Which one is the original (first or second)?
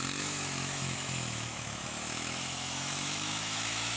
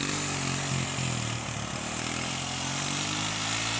second